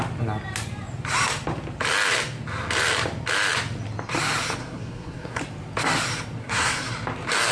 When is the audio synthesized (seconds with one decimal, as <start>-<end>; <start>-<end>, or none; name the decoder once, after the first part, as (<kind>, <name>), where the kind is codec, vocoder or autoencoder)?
4.6-5.4 (codec, SNAC); 6.4-6.9